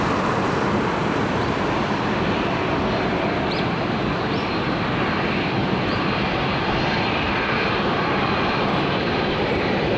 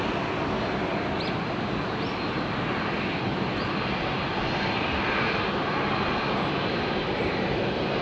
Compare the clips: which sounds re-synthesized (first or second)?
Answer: first